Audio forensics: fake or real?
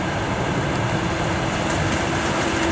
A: real